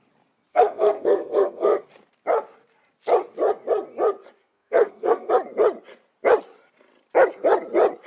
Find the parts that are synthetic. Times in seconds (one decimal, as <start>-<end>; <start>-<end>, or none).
0.5-1.9; 4.4-5.3